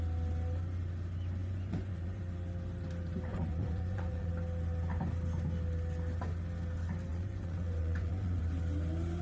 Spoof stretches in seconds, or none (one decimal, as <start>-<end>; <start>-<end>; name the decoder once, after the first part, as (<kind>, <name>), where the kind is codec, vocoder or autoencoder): 1.4-2.2 (vocoder, Vocos); 3.3-4.3; 7.1-8.4